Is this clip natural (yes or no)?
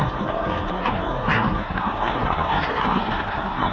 no